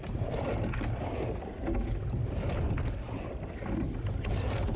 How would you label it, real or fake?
real